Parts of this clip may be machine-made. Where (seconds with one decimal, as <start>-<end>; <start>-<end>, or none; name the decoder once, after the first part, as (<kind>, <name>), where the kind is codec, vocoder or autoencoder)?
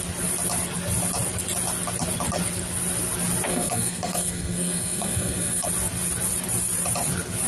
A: 3.5-5.7 (codec, SNAC)